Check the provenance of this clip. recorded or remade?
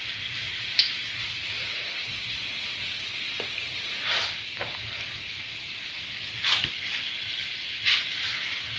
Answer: remade